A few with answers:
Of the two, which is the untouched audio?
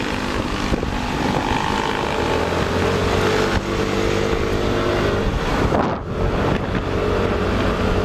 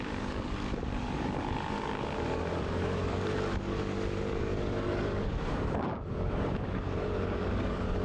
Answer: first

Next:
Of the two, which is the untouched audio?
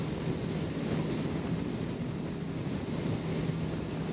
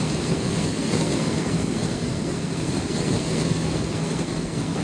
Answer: first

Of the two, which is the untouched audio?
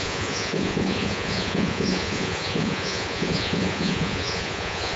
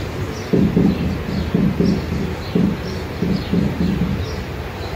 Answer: second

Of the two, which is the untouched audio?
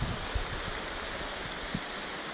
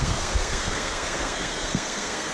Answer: first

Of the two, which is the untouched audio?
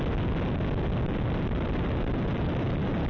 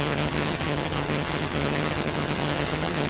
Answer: first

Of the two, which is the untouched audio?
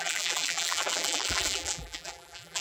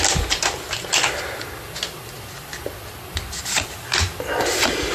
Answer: second